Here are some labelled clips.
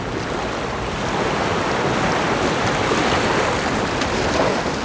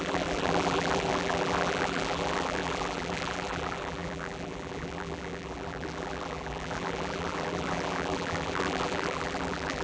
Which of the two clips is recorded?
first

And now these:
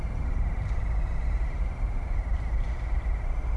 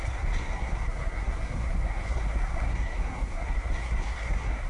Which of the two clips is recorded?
first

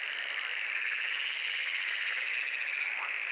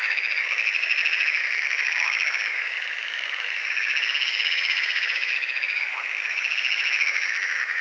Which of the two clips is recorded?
first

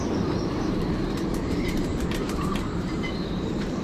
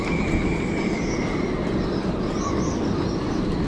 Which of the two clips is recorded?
second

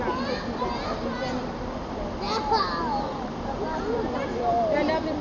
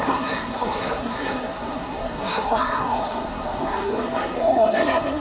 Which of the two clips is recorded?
first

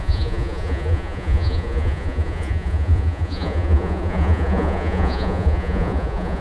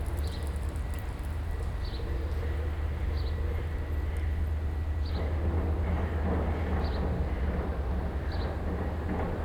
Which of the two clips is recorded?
second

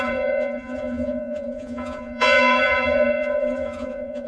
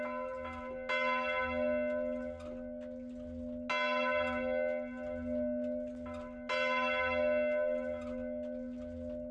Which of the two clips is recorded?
second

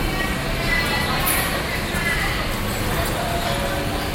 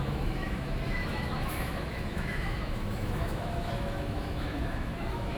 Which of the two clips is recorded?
first